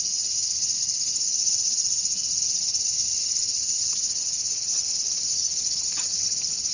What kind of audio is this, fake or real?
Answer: fake